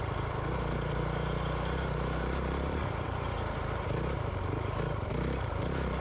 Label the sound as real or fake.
fake